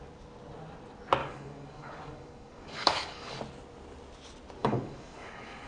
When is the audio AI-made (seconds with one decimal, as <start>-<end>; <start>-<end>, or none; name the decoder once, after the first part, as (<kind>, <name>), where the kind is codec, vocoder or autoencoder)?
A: 1.2-3.4 (codec, DAC); 4.6-5.7